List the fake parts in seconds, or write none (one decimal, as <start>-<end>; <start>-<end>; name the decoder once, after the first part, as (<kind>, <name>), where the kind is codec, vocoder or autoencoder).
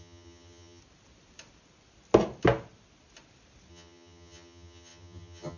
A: 0.0-0.8 (vocoder, HiFi-GAN); 3.7-5.6